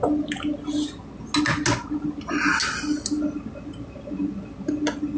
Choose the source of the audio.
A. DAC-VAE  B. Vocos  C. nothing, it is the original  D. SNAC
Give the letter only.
C